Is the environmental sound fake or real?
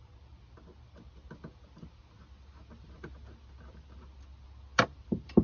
real